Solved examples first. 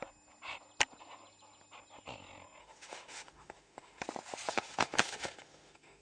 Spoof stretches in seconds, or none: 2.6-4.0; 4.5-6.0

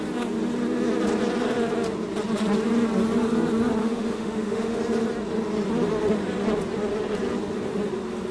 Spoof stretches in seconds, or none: 3.8-4.8

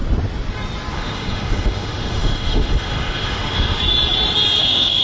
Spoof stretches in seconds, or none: 0.9-3.8; 4.6-5.0

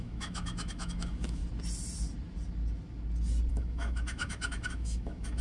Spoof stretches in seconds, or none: 0.0-1.4; 3.5-5.4

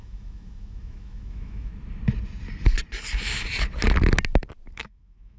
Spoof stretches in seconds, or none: 0.0-1.7; 4.7-5.4